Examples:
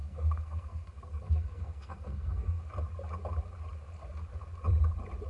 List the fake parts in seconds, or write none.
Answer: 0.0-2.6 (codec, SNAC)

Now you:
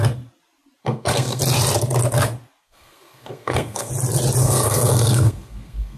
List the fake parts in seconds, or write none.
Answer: 0.8-1.4 (codec, SNAC); 2.6-3.9; 4.4-6.0